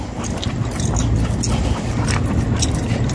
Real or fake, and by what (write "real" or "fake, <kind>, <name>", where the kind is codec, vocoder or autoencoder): real